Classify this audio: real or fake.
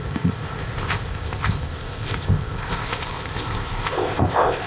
fake